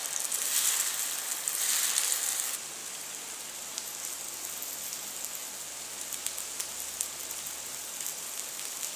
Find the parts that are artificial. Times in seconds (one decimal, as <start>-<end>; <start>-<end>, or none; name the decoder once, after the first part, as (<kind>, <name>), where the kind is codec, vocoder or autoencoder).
none